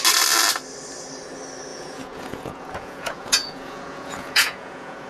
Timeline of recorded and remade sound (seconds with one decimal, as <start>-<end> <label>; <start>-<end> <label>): 0.0-1.7 recorded; 1.7-5.1 remade